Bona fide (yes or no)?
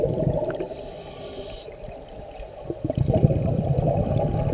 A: yes